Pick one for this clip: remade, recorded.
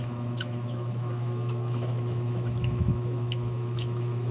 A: remade